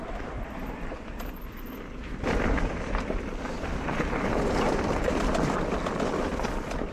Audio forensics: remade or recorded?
remade